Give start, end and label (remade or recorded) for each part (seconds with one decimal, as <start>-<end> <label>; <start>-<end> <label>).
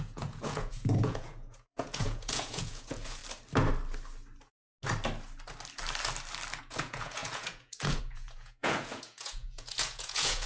0.0-3.2 remade; 3.2-6.6 recorded; 6.6-10.5 remade